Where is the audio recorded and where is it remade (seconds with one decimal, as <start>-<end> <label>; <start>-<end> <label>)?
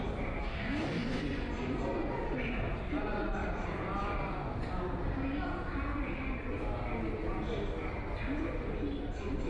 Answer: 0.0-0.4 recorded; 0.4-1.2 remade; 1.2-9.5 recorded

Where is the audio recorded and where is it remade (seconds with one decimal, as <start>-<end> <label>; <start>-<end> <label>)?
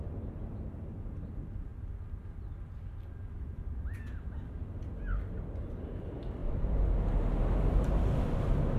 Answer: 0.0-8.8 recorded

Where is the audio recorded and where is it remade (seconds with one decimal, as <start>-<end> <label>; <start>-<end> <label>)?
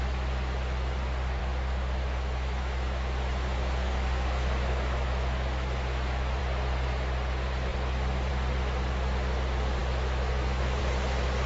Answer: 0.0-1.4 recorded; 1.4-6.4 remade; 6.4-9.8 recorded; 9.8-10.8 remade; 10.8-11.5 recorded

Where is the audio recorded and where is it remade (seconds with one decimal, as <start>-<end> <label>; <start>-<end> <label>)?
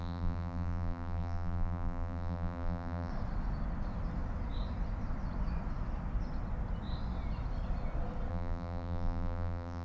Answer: 0.0-3.1 remade; 3.1-8.3 recorded; 8.3-9.8 remade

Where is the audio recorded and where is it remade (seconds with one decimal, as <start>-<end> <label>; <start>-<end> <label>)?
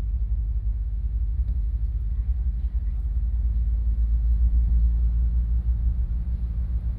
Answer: 0.0-0.7 recorded; 0.7-1.8 remade; 1.8-7.0 recorded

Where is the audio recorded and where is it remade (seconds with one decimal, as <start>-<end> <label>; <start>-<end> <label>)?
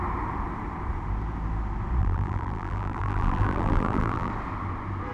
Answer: 0.0-2.0 recorded; 2.0-4.3 remade; 4.3-5.1 recorded